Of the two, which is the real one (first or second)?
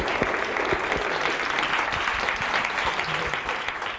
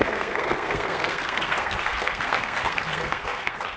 first